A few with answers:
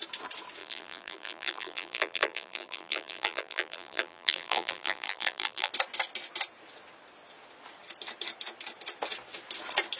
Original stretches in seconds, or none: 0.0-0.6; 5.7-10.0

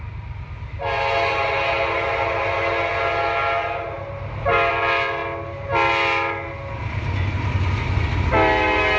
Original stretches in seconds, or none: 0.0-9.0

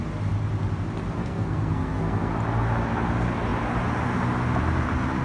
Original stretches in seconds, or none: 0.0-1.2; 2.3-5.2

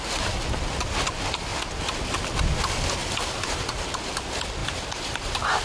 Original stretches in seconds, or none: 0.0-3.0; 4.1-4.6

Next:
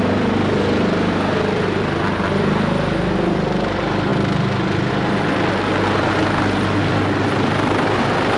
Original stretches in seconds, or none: 0.0-8.4

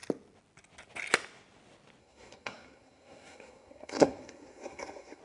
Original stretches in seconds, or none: 0.0-2.0